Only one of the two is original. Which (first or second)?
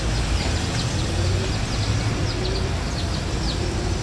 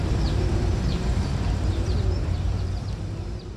first